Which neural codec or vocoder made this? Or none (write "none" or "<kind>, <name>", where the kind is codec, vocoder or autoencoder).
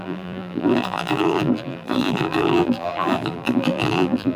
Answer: vocoder, BigVGAN v2